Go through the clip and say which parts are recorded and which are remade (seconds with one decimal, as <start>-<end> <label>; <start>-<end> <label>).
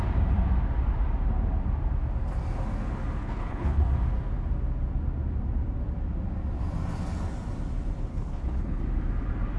0.0-3.2 recorded; 3.2-3.8 remade; 3.8-8.1 recorded; 8.1-8.8 remade; 8.8-9.6 recorded